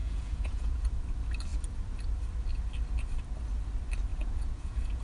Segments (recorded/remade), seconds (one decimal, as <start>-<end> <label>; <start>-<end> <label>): 0.0-0.8 remade; 0.8-4.1 recorded; 4.1-5.0 remade